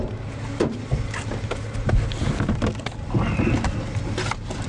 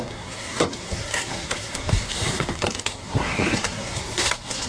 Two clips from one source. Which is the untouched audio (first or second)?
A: first